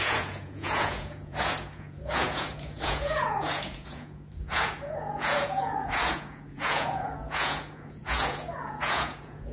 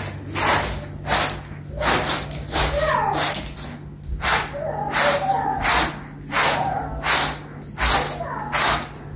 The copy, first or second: first